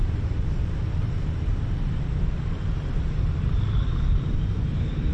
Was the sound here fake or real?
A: fake